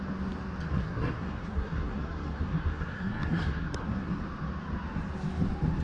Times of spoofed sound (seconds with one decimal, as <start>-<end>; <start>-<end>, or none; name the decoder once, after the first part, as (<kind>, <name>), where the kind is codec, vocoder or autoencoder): 0.7-4.2 (codec, SNAC)

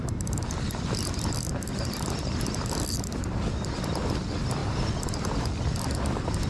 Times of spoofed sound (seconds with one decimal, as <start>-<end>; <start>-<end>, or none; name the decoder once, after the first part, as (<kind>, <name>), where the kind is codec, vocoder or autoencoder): 1.7-3.4 (vocoder, BigVGAN v2)

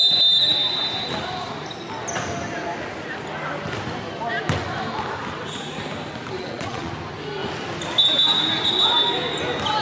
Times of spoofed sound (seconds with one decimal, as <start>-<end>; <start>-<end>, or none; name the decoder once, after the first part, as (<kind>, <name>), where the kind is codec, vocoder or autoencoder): 6.4-6.9 (vocoder, Vocos)

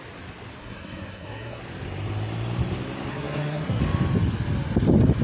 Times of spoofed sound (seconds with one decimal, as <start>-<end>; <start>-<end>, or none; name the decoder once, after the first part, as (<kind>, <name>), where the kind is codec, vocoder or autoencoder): 0.6-1.6 (codec, SNAC); 3.1-3.8

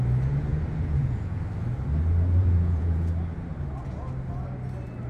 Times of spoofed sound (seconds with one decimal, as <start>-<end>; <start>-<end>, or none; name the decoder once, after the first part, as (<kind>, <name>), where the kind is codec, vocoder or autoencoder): 0.5-1.4 (vocoder, Vocos); 2.4-3.1

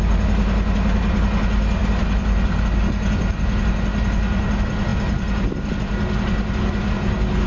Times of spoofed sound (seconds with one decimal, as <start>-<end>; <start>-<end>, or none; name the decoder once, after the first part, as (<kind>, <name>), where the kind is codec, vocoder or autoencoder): none